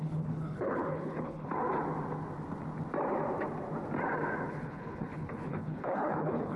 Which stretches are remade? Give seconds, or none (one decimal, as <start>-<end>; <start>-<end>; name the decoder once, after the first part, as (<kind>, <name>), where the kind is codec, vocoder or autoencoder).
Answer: 0.0-1.5 (codec, HILCodec); 4.5-6.6